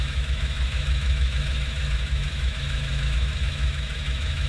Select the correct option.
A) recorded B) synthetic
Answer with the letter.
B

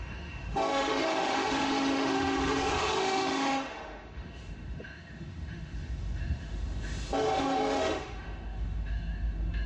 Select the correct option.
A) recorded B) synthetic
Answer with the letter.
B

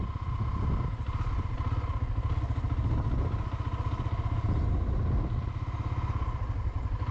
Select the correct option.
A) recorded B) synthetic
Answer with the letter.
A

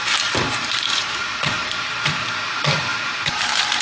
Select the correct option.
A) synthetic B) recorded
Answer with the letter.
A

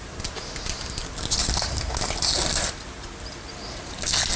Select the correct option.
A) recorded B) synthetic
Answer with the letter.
A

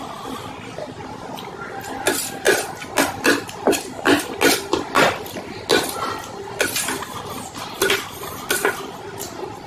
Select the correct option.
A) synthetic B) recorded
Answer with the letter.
B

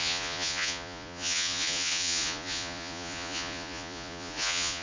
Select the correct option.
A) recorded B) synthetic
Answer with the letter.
B